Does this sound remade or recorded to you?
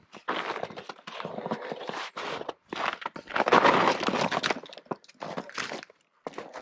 recorded